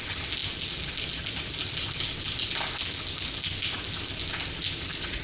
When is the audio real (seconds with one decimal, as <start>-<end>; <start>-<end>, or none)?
0.0-5.2